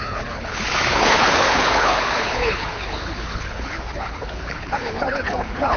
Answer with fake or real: fake